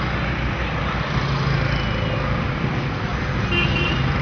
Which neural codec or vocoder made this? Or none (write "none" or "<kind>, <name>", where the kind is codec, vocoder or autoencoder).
none